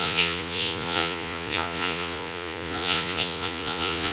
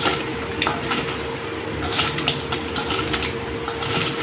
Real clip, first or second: second